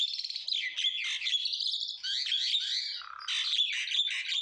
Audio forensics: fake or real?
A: real